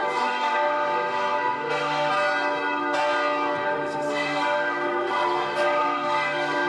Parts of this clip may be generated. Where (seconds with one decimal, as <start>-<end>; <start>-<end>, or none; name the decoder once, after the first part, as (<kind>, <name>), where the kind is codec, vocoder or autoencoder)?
0.0-2.1 (codec, SNAC); 3.6-6.7